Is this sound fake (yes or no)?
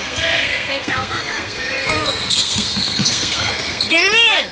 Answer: yes